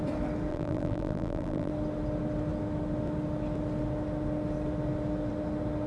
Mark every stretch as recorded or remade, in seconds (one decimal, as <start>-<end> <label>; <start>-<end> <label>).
0.0-0.5 recorded; 0.5-1.7 remade; 1.7-5.9 recorded